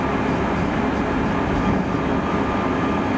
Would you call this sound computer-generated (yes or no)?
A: no